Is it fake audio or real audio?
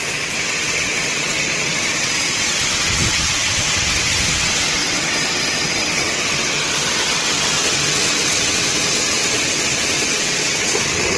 fake